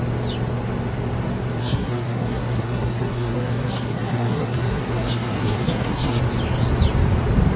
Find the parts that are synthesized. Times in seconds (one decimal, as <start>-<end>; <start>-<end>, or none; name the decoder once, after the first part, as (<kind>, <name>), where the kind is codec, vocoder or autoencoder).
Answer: 1.6-6.2 (codec, SNAC)